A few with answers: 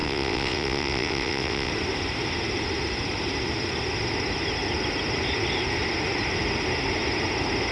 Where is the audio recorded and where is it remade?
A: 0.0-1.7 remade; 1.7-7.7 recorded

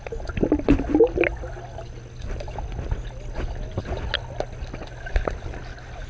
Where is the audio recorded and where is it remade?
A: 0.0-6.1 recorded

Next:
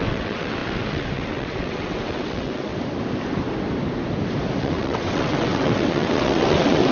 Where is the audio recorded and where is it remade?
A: 0.0-2.7 remade; 2.7-4.6 recorded; 4.6-6.9 remade

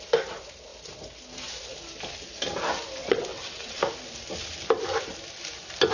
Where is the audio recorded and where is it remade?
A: 0.0-3.0 recorded; 3.0-3.8 remade; 3.8-5.9 recorded